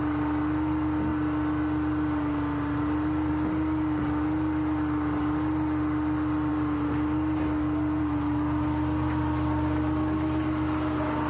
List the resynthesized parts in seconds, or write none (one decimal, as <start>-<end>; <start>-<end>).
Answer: none

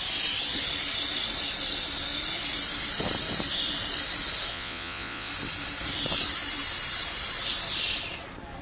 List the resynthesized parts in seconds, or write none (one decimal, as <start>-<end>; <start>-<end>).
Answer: 4.5-5.3

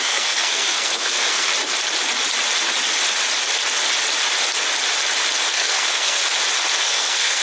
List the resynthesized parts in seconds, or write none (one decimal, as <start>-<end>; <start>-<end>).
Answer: 0.0-1.5; 5.5-6.2; 6.8-7.4

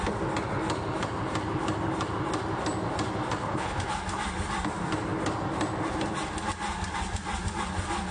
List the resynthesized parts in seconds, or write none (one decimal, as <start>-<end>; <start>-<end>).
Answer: 3.4-3.9